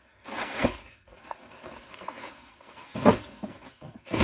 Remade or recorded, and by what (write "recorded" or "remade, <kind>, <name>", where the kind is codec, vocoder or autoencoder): remade, codec, SNAC